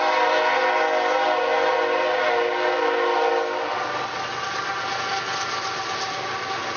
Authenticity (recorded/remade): recorded